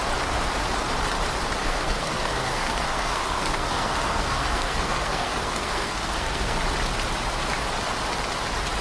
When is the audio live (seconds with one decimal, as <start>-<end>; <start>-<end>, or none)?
0.0-1.6; 6.6-8.8